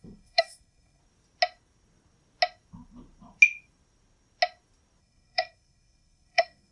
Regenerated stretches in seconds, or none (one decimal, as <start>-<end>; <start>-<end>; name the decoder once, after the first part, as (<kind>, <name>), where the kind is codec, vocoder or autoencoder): 0.0-1.0 (codec, SNAC); 5.0-6.7